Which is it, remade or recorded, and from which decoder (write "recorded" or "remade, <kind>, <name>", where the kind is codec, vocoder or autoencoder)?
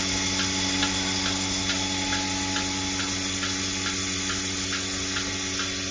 recorded